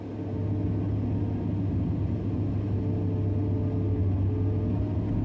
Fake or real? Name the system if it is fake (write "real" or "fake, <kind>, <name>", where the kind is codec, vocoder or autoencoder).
real